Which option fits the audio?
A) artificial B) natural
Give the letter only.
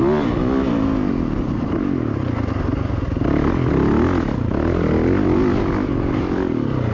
B